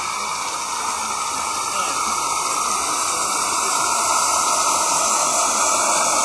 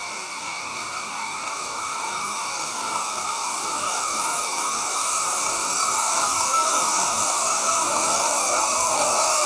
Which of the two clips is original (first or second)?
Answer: first